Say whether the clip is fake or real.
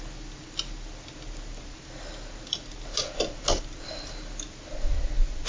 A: real